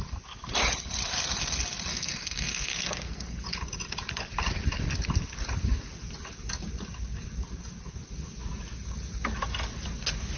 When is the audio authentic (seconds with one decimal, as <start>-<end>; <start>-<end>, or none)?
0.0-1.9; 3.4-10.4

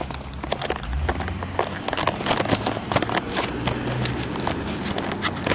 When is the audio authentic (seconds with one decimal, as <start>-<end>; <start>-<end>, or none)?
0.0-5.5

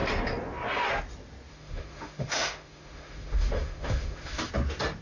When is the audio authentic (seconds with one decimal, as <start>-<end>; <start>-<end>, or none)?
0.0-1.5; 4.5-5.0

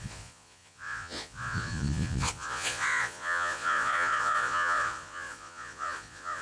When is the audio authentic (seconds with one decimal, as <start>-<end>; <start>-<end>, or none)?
none